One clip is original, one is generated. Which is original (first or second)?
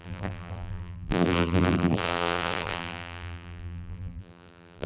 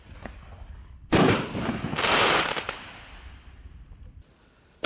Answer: second